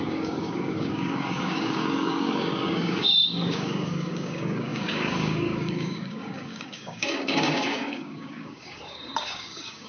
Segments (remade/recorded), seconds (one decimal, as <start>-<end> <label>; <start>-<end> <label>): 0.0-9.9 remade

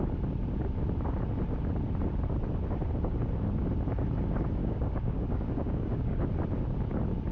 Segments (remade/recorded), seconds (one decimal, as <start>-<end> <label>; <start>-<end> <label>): 0.0-4.6 recorded; 4.6-6.2 remade; 6.2-7.3 recorded

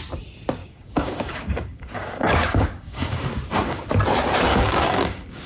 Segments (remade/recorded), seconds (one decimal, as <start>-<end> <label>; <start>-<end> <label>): 0.0-0.6 recorded; 0.6-3.9 remade; 3.9-4.5 recorded; 4.5-5.5 remade

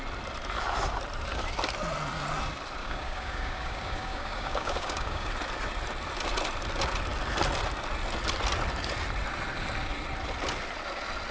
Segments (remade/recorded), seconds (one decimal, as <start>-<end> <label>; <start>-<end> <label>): 0.0-2.8 recorded; 2.8-5.3 remade; 5.3-11.3 recorded

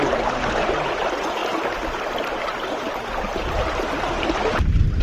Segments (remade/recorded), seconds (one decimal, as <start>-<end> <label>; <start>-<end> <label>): 0.0-5.0 recorded

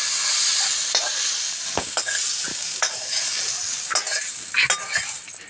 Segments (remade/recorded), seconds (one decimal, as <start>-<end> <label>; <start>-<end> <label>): 0.0-1.5 recorded; 1.5-2.1 remade; 2.1-2.5 recorded; 2.5-3.4 remade; 3.4-5.5 recorded

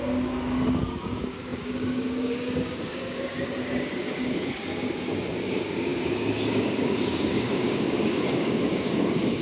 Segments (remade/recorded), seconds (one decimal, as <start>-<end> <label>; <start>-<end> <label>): 0.0-9.4 remade